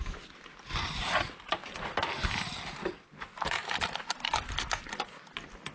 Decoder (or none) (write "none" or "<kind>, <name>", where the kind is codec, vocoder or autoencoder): none